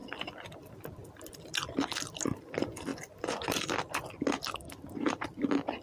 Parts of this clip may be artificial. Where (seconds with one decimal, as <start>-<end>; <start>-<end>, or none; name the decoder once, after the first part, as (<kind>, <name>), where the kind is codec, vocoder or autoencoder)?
none